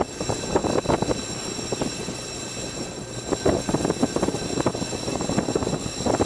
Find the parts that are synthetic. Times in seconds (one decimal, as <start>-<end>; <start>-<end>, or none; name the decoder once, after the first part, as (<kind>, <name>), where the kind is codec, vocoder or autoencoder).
none